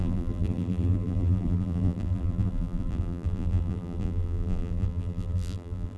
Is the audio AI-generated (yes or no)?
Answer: yes